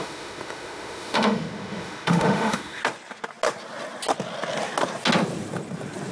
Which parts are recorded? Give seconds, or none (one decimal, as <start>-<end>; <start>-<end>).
2.8-6.1